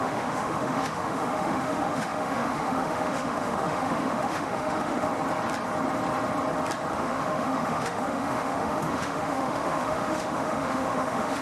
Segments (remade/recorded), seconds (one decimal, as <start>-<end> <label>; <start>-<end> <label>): 0.0-5.1 remade; 5.1-6.9 recorded; 6.9-11.4 remade